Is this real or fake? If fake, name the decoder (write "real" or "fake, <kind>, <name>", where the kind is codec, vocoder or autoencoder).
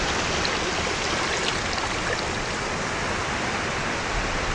real